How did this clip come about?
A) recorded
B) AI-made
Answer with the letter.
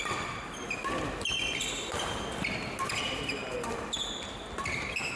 A